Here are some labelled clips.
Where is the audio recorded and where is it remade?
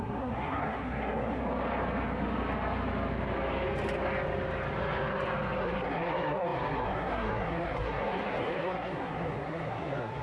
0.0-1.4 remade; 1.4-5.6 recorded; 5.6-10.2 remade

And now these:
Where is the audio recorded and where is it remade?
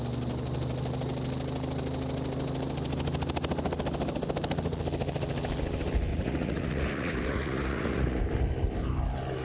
0.0-6.1 recorded; 6.1-8.2 remade; 8.2-9.4 recorded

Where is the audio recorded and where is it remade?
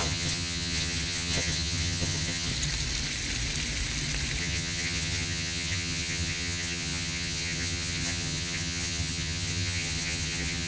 0.0-2.5 remade; 2.5-4.4 recorded; 4.4-10.7 remade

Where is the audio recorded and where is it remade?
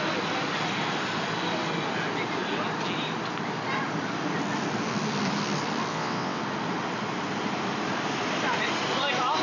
0.0-5.9 recorded; 5.9-6.4 remade; 6.4-9.4 recorded